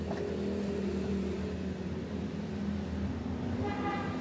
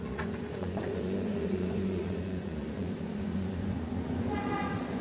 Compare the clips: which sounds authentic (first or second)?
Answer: first